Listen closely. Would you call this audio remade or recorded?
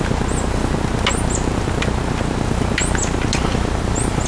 recorded